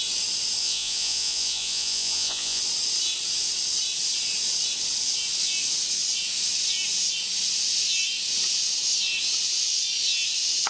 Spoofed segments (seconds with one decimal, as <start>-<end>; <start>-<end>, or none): 0.6-2.6